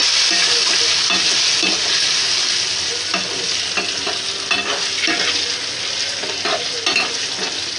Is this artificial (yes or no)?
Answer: no